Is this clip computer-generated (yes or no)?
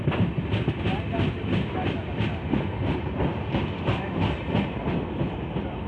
no